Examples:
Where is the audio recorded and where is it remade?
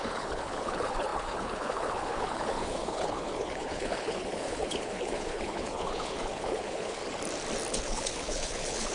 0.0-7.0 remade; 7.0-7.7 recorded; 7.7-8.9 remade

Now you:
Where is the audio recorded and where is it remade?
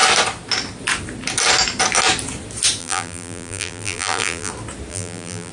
0.0-2.8 recorded; 2.8-4.5 remade; 4.5-4.9 recorded; 4.9-5.5 remade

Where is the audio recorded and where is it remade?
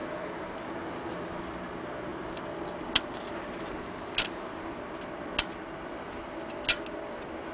0.0-7.5 recorded